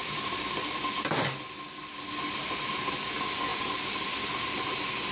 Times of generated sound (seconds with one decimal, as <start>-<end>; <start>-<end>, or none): none